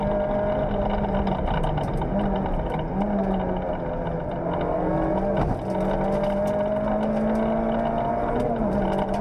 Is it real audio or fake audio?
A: real